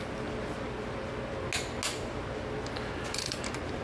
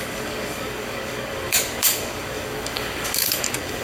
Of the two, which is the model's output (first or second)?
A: second